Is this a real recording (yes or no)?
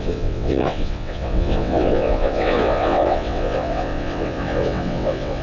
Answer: no